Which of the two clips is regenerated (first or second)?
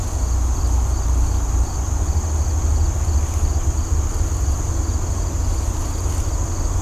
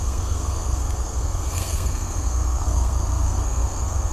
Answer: second